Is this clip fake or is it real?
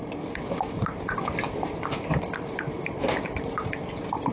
fake